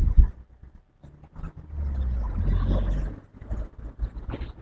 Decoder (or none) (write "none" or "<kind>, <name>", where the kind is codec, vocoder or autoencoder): none